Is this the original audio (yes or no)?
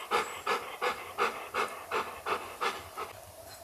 yes